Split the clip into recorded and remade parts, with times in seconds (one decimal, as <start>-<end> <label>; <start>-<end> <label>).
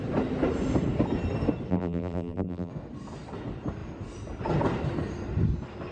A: 0.0-1.7 recorded; 1.7-2.7 remade; 2.7-5.9 recorded